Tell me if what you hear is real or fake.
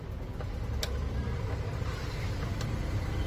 fake